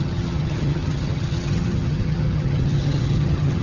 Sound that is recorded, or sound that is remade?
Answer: remade